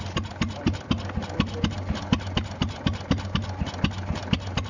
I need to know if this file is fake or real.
real